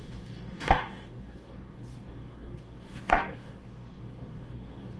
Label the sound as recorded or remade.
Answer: remade